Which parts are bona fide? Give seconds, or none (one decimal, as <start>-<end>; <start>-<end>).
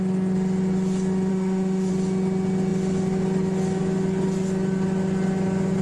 0.0-1.3; 1.9-5.8